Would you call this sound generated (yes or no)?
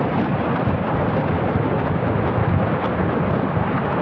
no